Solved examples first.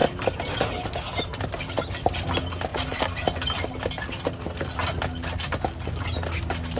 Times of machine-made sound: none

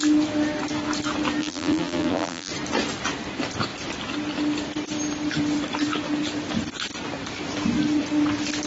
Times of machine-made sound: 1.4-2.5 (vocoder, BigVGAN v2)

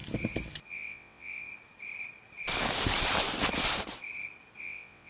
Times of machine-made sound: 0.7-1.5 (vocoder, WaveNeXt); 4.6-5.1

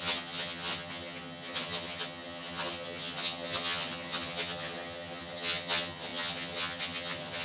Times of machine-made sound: 0.0-7.4 (vocoder, HiFi-GAN)